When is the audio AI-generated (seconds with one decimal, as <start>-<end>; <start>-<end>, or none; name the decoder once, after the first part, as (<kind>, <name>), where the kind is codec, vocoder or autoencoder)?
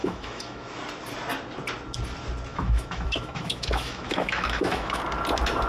0.0-0.8 (autoencoder, DAC-VAE); 2.5-5.0